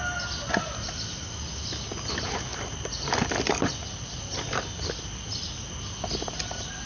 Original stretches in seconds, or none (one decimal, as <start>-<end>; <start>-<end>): 0.0-6.9